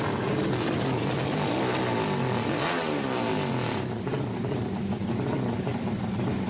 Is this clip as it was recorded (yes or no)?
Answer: yes